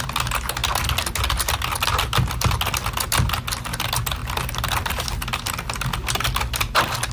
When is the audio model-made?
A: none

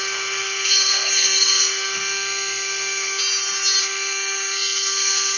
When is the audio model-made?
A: 0.0-3.2; 3.8-5.4

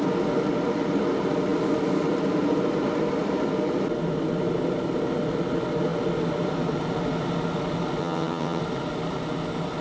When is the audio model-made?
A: 8.0-8.6

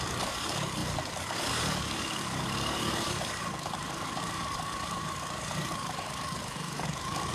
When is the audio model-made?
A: 0.0-7.3

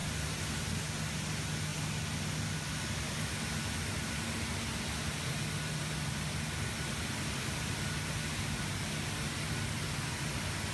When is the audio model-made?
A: none

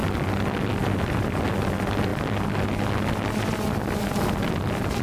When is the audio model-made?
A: none

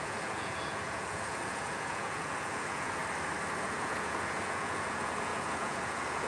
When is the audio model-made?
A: 0.0-3.0; 3.6-6.3